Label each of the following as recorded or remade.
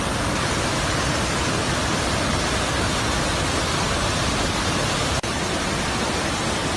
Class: recorded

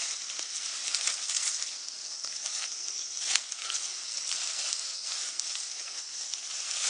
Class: remade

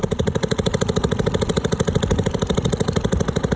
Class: recorded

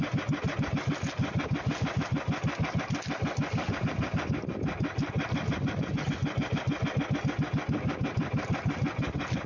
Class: recorded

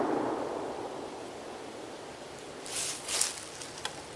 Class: recorded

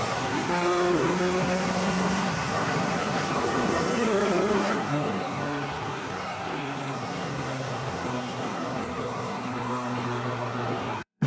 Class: remade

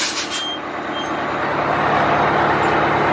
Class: recorded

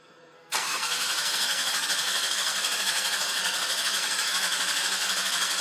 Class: remade